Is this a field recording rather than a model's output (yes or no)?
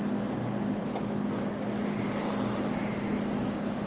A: yes